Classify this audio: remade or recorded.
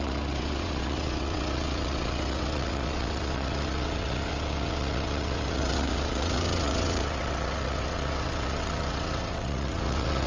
remade